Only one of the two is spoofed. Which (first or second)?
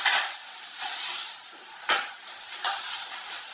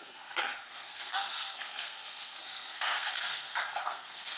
second